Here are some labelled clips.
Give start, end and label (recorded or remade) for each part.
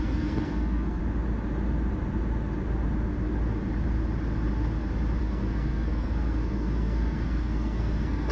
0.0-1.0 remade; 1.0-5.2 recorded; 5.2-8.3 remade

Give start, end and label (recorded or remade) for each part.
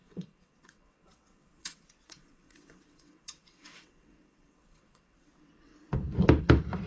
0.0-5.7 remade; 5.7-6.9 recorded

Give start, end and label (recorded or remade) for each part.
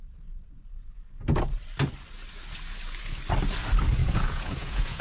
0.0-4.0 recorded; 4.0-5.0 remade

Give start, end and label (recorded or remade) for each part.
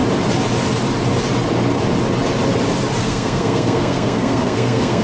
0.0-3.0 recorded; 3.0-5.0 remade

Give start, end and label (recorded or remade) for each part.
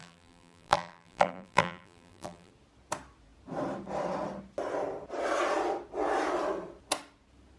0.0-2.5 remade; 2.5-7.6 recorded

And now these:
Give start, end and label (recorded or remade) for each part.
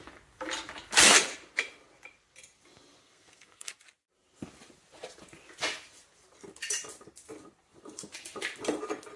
0.0-3.0 recorded; 3.0-3.7 remade; 3.7-9.2 recorded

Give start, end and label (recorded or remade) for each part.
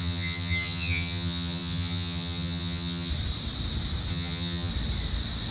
0.0-3.1 remade; 3.1-4.1 recorded; 4.1-4.7 remade; 4.7-5.5 recorded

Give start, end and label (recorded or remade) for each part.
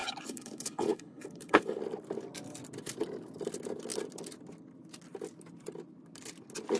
0.0-1.8 remade; 1.8-6.8 recorded